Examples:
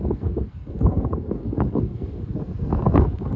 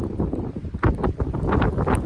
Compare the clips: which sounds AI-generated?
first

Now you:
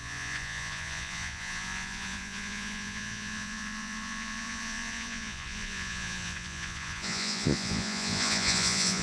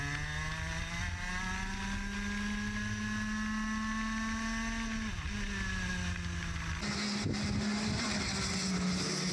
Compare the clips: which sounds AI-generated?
first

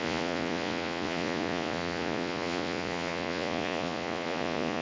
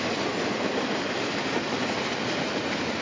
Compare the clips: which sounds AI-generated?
first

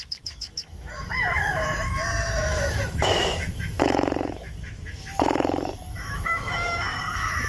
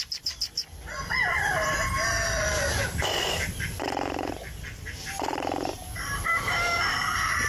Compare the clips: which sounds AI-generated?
first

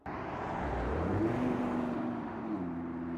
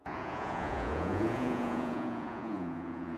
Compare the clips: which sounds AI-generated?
second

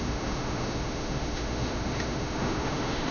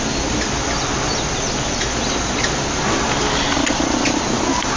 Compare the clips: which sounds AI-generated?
first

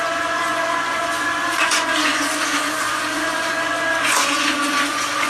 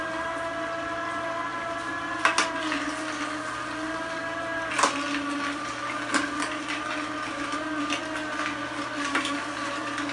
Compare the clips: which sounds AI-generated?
first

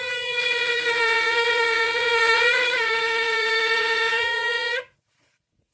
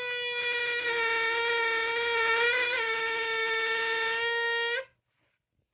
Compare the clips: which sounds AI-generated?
first